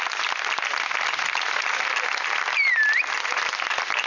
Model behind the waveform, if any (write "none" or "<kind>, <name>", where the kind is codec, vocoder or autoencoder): none